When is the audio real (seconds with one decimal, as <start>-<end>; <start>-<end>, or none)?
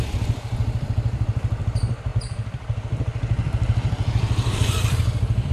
none